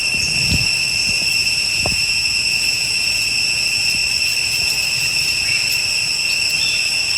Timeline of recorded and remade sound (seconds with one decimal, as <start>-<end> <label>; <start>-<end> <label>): 0.0-1.4 recorded; 1.4-3.6 remade; 3.6-7.2 recorded